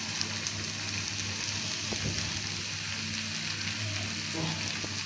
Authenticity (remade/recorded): recorded